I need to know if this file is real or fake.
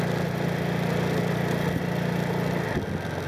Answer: real